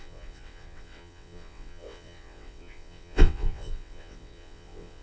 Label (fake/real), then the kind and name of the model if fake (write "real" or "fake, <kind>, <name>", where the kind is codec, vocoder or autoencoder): fake, vocoder, WaveNeXt